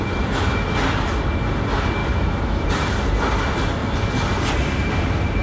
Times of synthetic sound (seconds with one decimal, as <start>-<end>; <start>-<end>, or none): 2.0-2.7